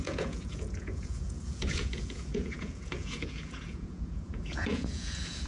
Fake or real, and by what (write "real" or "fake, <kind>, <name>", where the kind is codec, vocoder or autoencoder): fake, vocoder, Vocos